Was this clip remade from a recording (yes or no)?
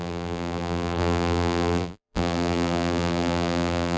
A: yes